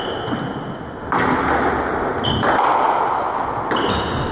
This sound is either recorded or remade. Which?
recorded